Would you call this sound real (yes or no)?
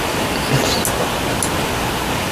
yes